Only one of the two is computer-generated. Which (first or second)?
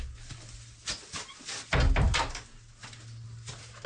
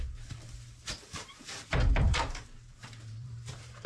second